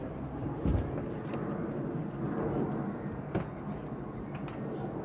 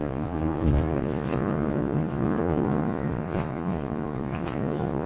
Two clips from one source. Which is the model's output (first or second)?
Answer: second